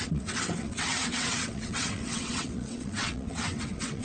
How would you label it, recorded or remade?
remade